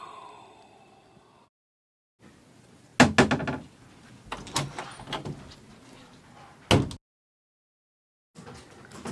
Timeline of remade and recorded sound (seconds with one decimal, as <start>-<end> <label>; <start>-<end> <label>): 0.0-9.1 recorded